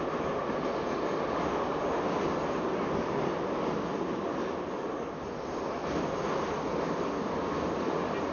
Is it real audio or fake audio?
real